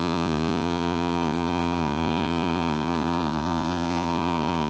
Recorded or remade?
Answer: remade